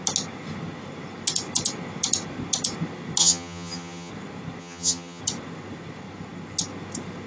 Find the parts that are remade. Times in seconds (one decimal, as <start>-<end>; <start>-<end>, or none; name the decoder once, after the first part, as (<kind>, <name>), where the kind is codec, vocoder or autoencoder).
3.2-4.1 (vocoder, HiFi-GAN); 4.6-5.2